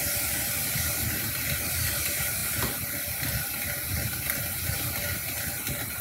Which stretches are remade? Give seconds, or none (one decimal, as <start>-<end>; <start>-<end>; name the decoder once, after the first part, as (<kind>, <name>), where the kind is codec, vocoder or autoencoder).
none